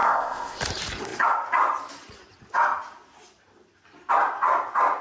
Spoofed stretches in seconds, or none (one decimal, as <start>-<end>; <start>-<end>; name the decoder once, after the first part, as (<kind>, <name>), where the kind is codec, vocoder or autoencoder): 0.0-0.6 (codec, ZipCodec)

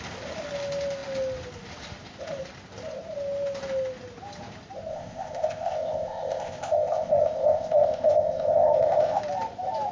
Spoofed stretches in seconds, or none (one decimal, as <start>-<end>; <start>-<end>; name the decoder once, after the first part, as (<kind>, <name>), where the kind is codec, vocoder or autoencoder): 4.9-9.2 (codec, ZipCodec)

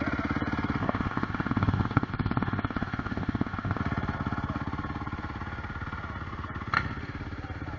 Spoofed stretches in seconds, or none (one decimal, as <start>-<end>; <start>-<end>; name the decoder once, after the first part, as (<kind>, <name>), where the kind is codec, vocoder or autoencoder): 0.8-3.8 (codec, ZipCodec)

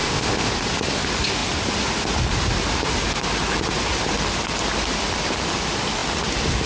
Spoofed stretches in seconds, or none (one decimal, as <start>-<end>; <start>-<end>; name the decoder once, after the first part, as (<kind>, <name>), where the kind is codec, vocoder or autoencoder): 0.0-0.5 (codec, ZipCodec)

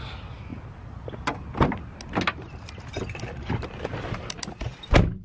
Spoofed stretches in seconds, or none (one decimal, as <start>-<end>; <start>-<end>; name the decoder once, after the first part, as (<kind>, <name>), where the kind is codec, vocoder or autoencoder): none

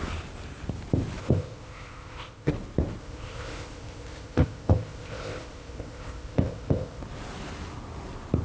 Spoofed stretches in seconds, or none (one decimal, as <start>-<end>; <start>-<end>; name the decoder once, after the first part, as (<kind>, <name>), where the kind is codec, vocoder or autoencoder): 1.2-2.5 (codec, ZipCodec); 3.0-7.0